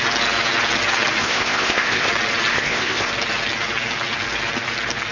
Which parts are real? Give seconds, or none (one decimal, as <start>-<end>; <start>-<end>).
0.0-1.2; 2.1-2.5; 3.1-5.1